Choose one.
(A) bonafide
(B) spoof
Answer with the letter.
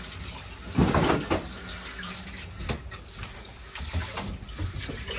A